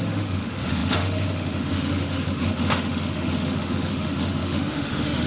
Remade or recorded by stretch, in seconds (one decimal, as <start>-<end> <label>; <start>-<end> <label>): 0.0-5.3 remade